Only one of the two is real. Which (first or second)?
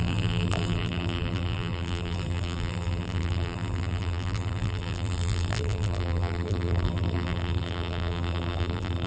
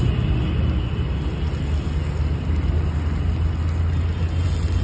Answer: second